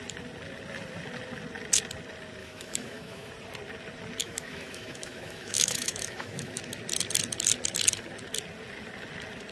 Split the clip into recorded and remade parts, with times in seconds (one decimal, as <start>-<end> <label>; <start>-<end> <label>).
0.0-2.4 recorded; 2.4-3.3 remade; 3.3-4.2 recorded; 4.2-6.6 remade; 6.6-9.5 recorded